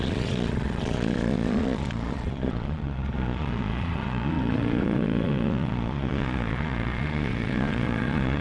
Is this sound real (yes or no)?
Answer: no